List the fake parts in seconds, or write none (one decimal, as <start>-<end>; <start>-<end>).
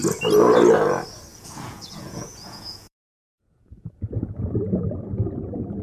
1.3-4.8